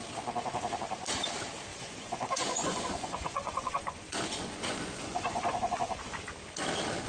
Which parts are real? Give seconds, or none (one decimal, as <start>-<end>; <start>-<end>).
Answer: 0.0-1.7; 6.0-7.1